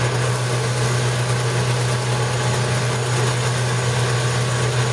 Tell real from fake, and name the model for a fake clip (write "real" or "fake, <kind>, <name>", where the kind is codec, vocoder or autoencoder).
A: real